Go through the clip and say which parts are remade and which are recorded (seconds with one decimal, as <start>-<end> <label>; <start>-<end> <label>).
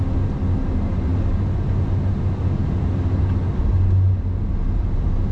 0.0-5.3 recorded